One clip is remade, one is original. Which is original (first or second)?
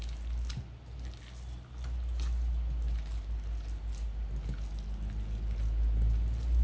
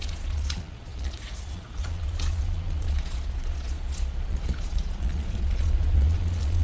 first